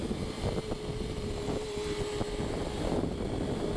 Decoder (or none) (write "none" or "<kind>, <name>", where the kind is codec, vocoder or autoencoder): none